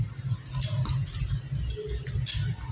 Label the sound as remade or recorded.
recorded